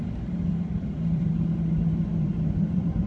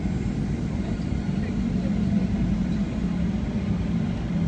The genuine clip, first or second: second